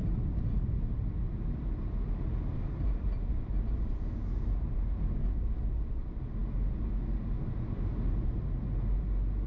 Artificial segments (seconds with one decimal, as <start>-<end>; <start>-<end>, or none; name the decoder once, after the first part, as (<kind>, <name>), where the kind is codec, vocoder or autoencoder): 0.0-4.1 (vocoder, BigVGAN v2)